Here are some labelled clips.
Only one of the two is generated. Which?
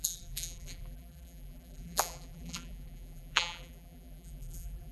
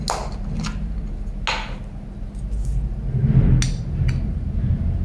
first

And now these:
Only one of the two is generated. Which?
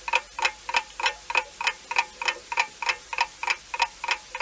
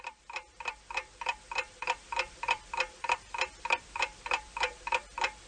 second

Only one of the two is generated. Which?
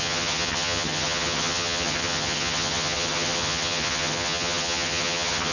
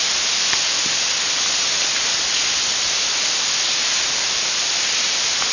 first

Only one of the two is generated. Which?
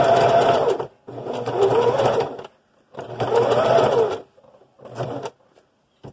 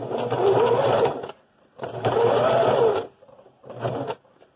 second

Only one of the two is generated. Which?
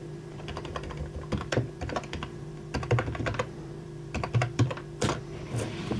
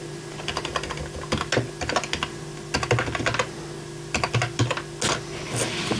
first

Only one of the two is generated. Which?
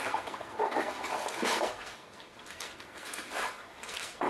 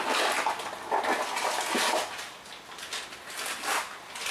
first